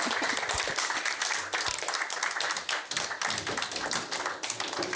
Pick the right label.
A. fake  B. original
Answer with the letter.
B